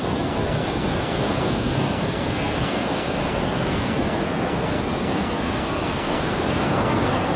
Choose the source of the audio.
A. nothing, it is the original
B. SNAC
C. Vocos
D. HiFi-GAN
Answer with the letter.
B